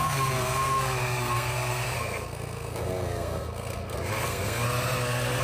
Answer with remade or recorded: remade